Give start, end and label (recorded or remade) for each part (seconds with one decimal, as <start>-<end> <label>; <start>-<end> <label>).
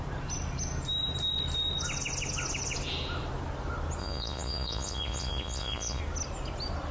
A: 0.0-4.0 recorded; 4.0-6.0 remade; 6.0-6.9 recorded